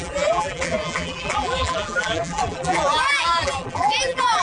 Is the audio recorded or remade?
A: remade